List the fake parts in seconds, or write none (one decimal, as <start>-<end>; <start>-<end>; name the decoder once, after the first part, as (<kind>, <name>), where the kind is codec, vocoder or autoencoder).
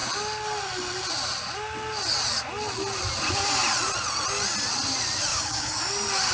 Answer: 5.3-5.8 (codec, DAC)